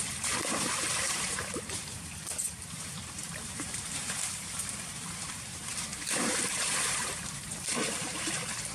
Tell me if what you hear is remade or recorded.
remade